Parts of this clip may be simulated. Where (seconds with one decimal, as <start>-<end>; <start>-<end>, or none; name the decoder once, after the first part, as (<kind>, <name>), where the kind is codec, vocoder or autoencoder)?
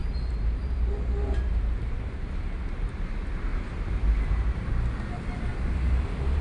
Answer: 0.0-2.9 (vocoder, BigVGAN v2); 3.5-4.7; 5.5-6.4